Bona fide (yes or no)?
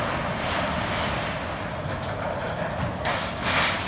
yes